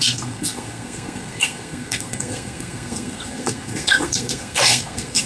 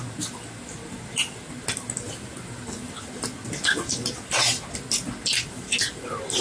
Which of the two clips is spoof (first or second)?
first